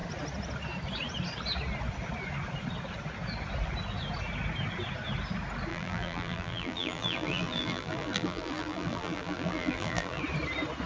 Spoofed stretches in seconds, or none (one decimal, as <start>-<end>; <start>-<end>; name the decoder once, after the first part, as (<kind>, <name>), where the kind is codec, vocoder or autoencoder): 5.7-10.2 (vocoder, BigVGAN v2)